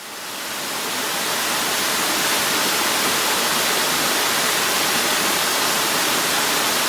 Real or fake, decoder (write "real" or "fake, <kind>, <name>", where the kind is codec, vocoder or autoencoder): real